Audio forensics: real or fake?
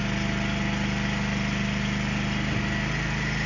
real